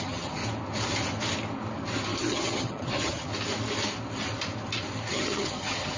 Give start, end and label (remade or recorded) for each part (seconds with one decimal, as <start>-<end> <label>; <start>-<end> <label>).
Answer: 0.0-0.4 remade; 0.4-2.2 recorded; 2.2-3.3 remade; 3.3-5.1 recorded; 5.1-6.0 remade